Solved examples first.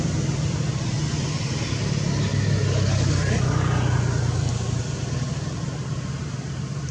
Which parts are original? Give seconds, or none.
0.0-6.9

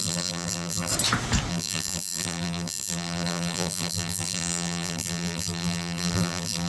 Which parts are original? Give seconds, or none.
0.9-1.5

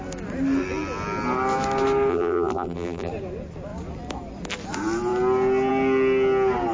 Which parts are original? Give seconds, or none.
0.0-2.1; 3.1-6.7

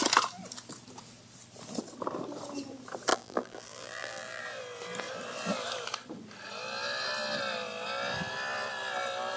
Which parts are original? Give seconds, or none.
0.0-3.1; 4.4-9.4